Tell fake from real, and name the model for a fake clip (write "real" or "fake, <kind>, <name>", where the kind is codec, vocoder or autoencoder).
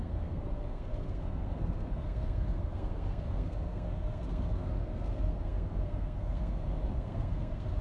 fake, codec, SNAC